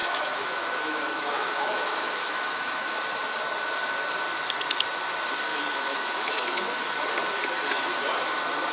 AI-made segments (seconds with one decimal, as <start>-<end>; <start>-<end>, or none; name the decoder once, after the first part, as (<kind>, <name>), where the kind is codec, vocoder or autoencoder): 0.0-3.0 (autoencoder, DAC-VAE); 5.5-6.7